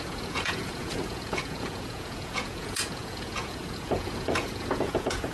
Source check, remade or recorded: remade